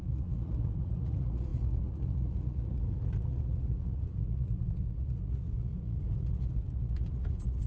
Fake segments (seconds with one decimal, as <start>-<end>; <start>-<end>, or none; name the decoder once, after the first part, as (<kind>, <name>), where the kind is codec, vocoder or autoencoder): 0.0-7.7 (vocoder, Vocos)